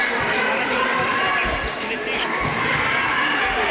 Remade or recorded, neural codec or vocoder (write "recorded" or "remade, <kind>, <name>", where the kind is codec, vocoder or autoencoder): recorded